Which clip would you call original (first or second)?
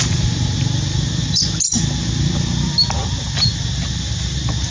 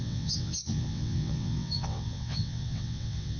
first